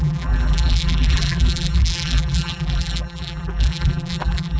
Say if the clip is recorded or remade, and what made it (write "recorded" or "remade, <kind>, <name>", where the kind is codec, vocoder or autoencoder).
remade, vocoder, BigVGAN v2